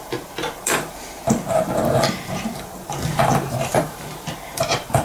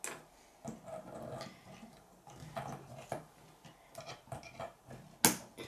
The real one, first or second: second